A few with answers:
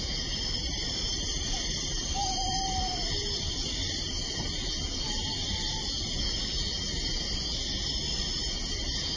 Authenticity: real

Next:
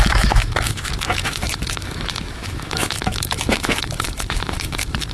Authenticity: fake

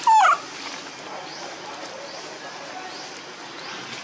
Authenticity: real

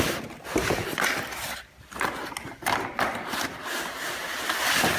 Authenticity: real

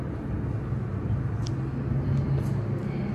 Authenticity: real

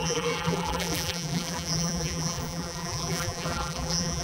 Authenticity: fake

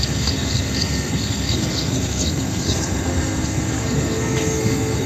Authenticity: fake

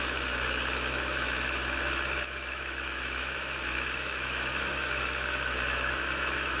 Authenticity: fake